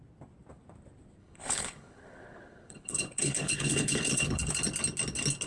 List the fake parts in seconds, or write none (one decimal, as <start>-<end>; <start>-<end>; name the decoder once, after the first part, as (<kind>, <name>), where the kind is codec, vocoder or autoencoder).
1.2-4.5 (codec, HILCodec)